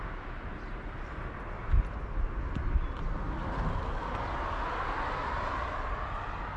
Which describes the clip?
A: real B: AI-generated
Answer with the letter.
A